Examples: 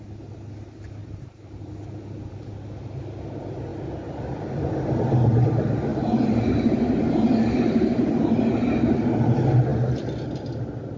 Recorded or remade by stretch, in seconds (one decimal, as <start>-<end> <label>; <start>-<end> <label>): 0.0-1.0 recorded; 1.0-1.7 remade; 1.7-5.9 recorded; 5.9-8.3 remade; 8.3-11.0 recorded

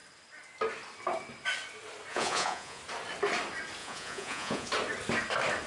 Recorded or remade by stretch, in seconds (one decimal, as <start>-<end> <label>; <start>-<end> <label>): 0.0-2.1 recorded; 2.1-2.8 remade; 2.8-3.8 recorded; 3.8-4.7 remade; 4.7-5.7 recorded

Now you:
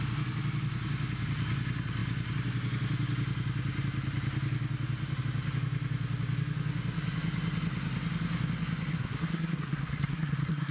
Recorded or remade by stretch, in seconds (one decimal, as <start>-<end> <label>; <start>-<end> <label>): 0.0-8.9 recorded; 8.9-10.7 remade